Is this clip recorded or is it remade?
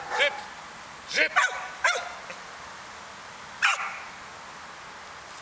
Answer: recorded